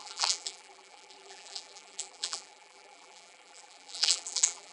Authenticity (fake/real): fake